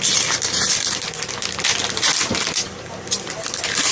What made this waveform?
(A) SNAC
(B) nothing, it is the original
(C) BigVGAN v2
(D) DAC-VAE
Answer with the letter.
C